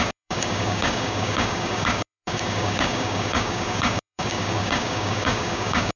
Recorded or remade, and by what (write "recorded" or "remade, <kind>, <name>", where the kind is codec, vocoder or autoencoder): remade, codec, DAC